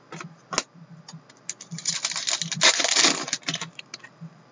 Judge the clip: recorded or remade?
recorded